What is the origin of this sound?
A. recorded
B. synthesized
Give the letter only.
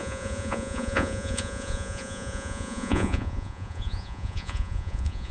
B